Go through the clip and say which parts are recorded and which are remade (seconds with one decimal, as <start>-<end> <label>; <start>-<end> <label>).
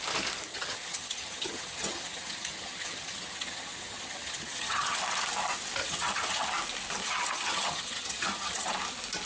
0.0-0.5 recorded; 0.5-5.0 remade; 5.0-5.8 recorded; 5.8-6.5 remade; 6.5-7.0 recorded; 7.0-8.7 remade; 8.7-9.3 recorded